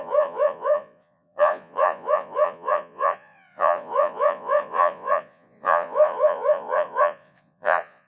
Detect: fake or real fake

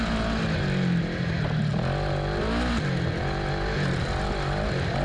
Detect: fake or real real